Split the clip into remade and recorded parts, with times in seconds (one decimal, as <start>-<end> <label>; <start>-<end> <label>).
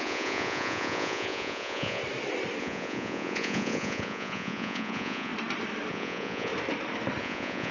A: 0.0-2.0 remade; 2.0-2.6 recorded; 2.6-5.3 remade; 5.3-5.9 recorded; 5.9-6.5 remade; 6.5-7.2 recorded; 7.2-7.7 remade